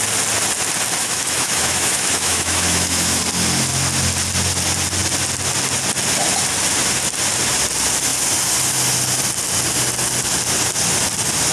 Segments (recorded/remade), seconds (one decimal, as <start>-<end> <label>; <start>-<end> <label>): 0.0-1.0 recorded; 1.0-3.2 remade; 3.2-11.5 recorded